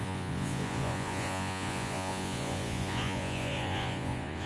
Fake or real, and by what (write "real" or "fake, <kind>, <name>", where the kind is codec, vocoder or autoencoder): fake, vocoder, Vocos